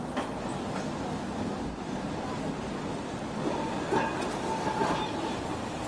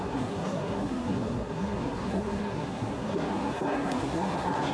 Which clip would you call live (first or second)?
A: first